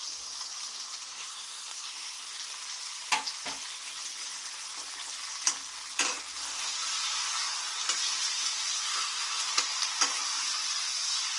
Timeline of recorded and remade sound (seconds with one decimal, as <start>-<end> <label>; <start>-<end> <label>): 0.0-1.1 recorded; 1.1-2.2 remade; 2.2-8.9 recorded; 8.9-9.4 remade; 9.4-11.4 recorded